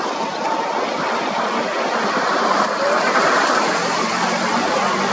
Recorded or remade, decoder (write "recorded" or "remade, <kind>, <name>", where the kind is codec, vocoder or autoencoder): recorded